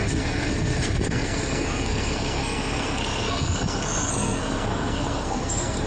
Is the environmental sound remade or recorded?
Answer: remade